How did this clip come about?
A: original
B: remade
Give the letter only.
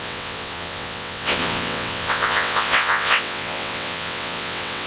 B